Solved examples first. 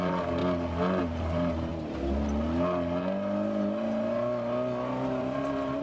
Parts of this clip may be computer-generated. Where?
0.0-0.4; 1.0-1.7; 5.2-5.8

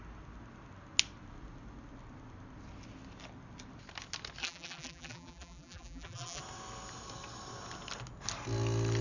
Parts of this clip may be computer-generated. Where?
4.4-6.4